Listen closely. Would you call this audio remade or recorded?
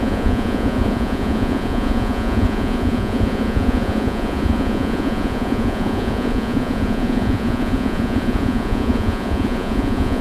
remade